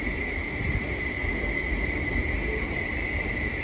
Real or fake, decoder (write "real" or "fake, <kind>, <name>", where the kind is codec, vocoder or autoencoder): real